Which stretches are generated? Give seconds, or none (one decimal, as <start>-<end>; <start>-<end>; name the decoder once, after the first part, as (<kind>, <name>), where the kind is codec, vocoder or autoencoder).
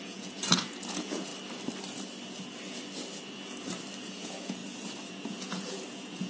0.0-1.3 (vocoder, Vocos); 4.0-4.6; 5.1-6.3